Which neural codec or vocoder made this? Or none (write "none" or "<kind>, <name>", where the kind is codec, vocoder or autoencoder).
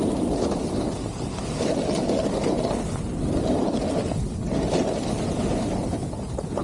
none